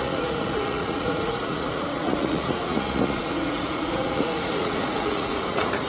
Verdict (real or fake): fake